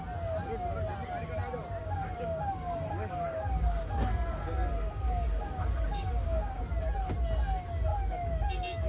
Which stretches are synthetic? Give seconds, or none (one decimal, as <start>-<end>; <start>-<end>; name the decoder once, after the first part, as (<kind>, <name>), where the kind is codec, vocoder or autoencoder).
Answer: 1.8-6.6 (codec, DAC); 7.9-8.5